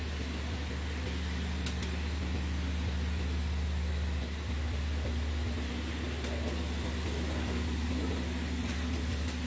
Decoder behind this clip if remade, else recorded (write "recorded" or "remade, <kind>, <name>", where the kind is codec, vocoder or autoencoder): recorded